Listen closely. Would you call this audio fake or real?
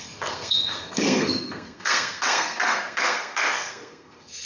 fake